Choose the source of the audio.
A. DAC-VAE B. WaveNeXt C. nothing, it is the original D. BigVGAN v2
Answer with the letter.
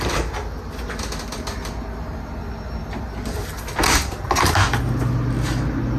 C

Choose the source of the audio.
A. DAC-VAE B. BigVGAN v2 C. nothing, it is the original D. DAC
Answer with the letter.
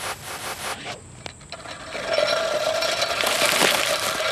C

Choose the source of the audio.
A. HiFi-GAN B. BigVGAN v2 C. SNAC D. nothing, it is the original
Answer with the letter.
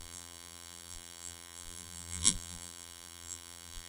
B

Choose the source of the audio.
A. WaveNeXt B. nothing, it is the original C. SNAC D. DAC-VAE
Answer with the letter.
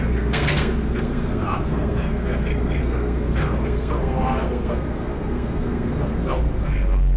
C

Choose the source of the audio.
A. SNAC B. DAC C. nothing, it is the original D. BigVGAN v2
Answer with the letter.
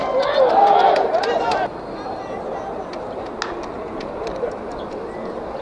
C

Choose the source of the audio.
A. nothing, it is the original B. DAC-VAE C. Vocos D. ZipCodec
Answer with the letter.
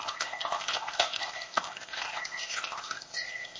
D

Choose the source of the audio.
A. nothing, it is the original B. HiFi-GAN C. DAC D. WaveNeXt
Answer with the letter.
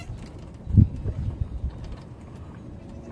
A